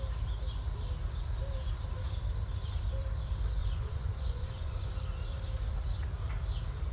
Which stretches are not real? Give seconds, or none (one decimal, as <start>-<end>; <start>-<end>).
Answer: 3.6-4.9